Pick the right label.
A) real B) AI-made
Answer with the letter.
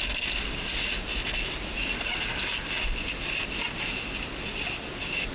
A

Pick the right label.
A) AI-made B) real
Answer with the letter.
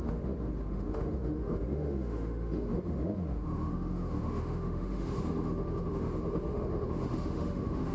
A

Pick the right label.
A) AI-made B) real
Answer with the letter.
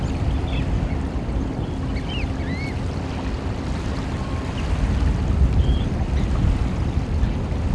B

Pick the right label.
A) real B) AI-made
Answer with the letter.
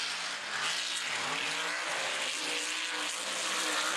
A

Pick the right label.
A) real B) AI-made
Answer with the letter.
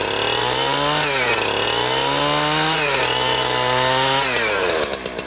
A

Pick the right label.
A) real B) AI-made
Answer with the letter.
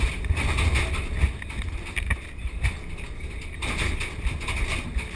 A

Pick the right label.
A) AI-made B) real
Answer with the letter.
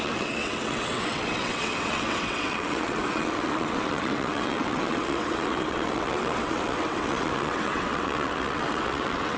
A